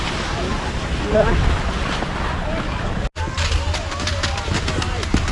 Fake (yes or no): no